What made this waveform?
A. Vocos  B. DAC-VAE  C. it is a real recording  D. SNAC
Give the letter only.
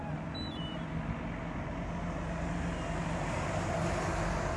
C